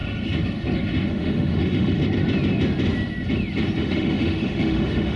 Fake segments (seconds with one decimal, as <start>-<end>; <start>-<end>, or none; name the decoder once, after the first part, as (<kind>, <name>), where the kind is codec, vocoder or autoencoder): 1.1-2.0 (autoencoder, DAC-VAE); 3.8-5.2